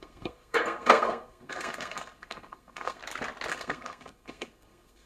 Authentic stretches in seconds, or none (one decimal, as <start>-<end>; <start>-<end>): 3.0-3.5